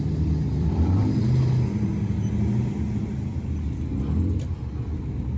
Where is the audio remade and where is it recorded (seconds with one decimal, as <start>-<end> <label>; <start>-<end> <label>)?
0.0-0.5 recorded; 0.5-1.9 remade; 1.9-5.4 recorded

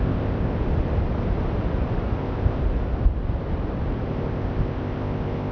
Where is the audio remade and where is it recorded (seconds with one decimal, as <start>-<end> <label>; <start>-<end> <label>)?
0.0-0.5 remade; 0.5-2.2 recorded; 2.2-2.6 remade; 2.6-4.1 recorded; 4.1-5.5 remade

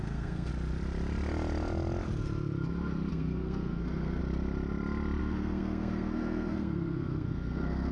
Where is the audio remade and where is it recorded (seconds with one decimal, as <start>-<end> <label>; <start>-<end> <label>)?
0.0-0.5 remade; 0.5-3.1 recorded; 3.1-4.2 remade; 4.2-5.2 recorded; 5.2-7.9 remade

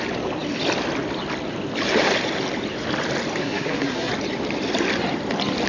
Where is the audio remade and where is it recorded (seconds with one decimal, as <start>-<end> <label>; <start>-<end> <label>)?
0.0-3.4 recorded; 3.4-4.1 remade; 4.1-5.7 recorded

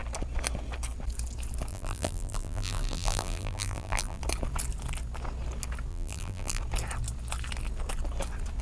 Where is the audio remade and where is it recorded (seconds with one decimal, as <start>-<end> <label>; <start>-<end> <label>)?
0.0-1.7 recorded; 1.7-4.2 remade; 4.2-5.9 recorded; 5.9-6.6 remade; 6.6-8.6 recorded

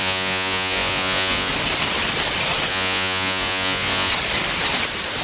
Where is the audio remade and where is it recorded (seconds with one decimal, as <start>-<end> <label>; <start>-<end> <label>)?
0.0-1.5 remade; 1.5-2.7 recorded; 2.7-4.1 remade; 4.1-5.2 recorded

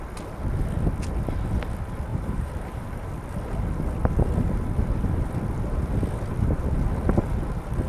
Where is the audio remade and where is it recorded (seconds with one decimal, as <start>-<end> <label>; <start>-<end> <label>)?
0.0-2.1 recorded; 2.1-3.1 remade; 3.1-7.9 recorded